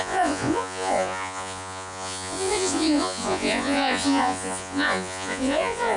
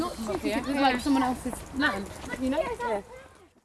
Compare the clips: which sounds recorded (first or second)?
second